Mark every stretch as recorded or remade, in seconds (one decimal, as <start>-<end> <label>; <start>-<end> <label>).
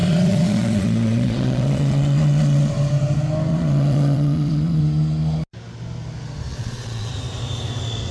0.0-2.7 remade; 2.7-3.5 recorded; 3.5-4.8 remade; 4.8-6.5 recorded; 6.5-7.1 remade; 7.1-8.1 recorded